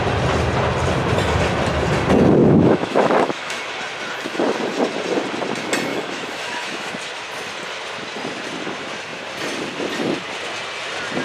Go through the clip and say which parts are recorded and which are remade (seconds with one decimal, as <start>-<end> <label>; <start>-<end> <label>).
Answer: 0.0-2.4 recorded; 2.4-3.6 remade; 3.6-5.9 recorded; 5.9-6.9 remade; 6.9-11.2 recorded

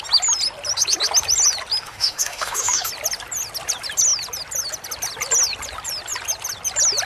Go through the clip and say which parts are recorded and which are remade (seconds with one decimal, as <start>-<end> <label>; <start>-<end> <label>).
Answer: 0.0-1.8 recorded; 1.8-2.9 remade; 2.9-7.1 recorded

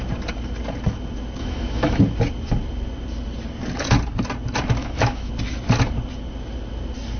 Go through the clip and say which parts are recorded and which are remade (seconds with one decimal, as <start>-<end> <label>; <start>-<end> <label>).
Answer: 0.0-1.4 recorded; 1.4-2.0 remade; 2.0-4.8 recorded; 4.8-5.3 remade; 5.3-7.2 recorded